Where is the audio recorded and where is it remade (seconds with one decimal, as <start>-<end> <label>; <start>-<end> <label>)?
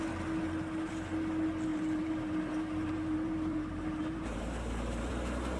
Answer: 0.0-1.7 recorded; 1.7-5.1 remade; 5.1-5.6 recorded